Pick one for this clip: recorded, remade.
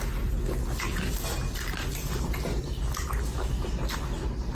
recorded